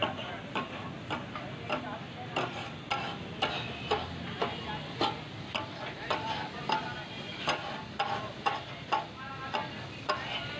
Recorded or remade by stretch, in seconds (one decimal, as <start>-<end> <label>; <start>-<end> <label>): 0.0-10.6 recorded